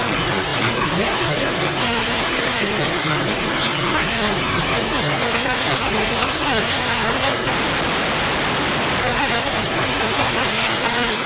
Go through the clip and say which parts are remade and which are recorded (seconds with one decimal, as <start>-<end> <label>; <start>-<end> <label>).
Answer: 0.0-7.5 remade; 7.5-9.0 recorded; 9.0-11.3 remade